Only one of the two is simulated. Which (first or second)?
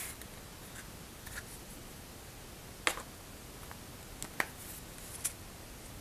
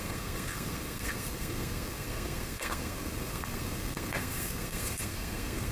second